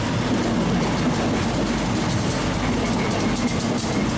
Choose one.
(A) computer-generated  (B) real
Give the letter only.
B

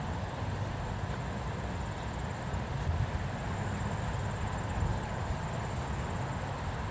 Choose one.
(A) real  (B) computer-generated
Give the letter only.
A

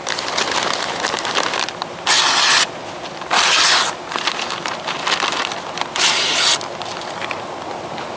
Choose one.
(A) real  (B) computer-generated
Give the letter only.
B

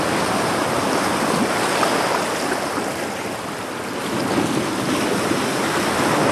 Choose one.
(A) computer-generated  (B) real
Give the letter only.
B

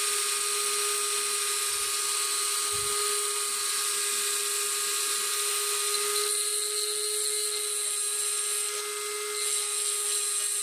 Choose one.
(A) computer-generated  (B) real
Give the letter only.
B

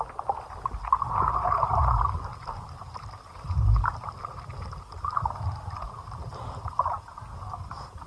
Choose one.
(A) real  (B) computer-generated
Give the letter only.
A